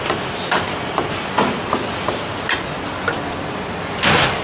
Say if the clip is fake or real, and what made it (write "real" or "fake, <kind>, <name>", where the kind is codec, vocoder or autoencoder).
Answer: real